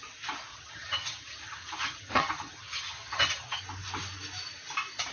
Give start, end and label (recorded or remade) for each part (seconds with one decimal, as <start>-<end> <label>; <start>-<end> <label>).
0.0-0.5 recorded; 0.5-3.6 remade; 3.6-5.1 recorded